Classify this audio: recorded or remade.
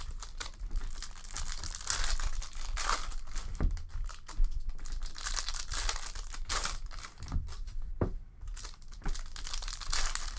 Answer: remade